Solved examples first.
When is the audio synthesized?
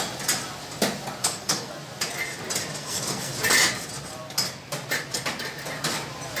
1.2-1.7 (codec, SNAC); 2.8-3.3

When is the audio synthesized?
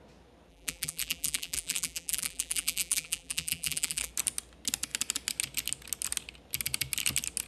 0.5-4.1 (vocoder, BigVGAN v2)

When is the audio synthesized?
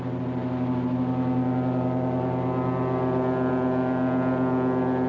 none